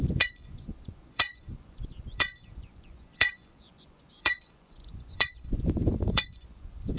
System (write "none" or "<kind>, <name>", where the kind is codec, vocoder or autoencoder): vocoder, Vocos